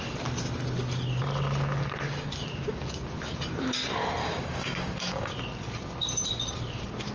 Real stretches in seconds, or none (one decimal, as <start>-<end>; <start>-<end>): 0.0-4.2; 5.3-7.1

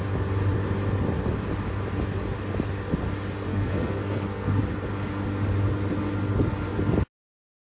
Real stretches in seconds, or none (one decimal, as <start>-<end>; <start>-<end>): 0.0-3.5; 4.6-7.6

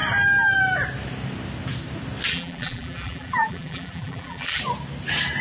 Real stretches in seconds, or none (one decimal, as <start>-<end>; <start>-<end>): 0.0-2.3; 4.6-5.4

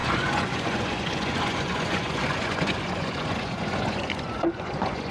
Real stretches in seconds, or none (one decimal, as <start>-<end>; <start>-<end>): none

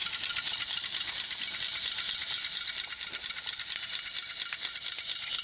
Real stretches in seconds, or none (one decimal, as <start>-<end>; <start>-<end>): 1.6-5.4

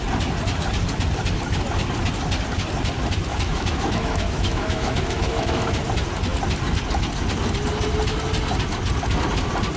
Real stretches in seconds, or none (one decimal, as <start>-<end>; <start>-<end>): 0.0-3.3; 5.8-9.8

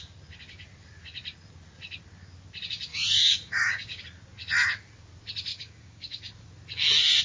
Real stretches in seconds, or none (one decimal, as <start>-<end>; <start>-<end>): 0.0-2.9; 4.0-5.5; 6.3-7.2